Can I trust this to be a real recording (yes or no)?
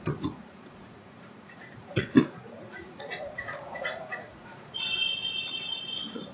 no